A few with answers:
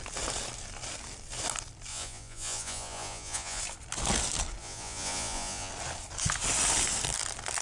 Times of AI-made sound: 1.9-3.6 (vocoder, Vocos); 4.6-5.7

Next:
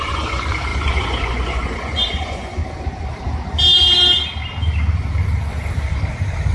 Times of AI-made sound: 0.0-2.6 (vocoder, Vocos)